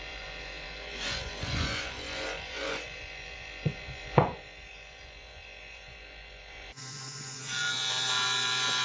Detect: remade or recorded remade